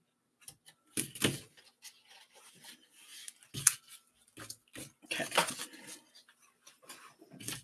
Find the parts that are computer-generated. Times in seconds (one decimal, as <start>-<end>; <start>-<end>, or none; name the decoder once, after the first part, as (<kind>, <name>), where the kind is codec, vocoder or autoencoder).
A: none